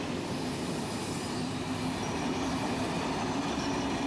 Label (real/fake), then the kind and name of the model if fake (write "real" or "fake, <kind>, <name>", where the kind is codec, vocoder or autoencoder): real